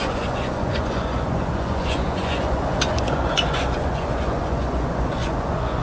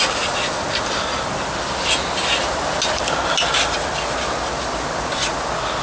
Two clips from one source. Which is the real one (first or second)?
second